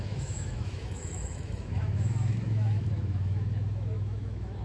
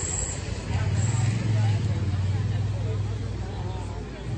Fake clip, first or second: first